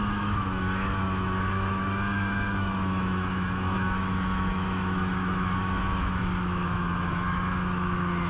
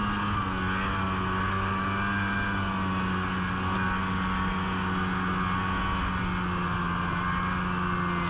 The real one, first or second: second